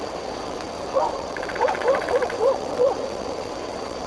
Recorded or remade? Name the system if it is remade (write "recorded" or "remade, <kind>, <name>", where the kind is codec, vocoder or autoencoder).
remade, vocoder, WaveNeXt